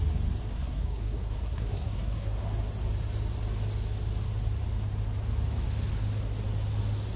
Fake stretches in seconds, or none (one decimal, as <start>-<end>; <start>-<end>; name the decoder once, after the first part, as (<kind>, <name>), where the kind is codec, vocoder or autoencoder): 0.5-2.4 (codec, SNAC)